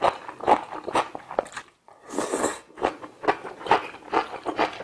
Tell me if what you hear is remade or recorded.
recorded